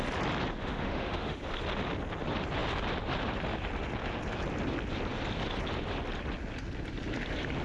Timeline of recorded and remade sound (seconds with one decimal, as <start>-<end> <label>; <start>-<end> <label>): 0.0-0.6 recorded; 0.6-1.4 remade; 1.4-7.6 recorded